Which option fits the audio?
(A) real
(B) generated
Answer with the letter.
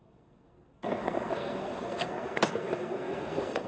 B